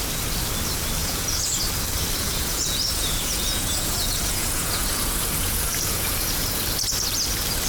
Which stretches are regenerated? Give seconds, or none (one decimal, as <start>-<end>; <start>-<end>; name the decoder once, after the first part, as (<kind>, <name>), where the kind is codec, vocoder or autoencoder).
1.0-1.6 (vocoder, Vocos); 2.2-6.6